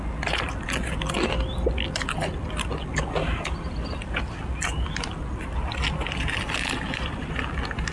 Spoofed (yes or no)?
no